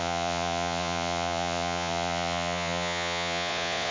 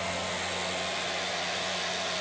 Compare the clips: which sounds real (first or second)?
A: second